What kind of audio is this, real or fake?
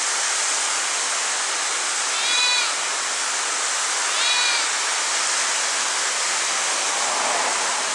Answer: real